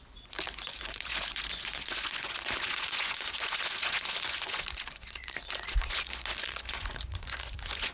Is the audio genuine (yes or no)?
no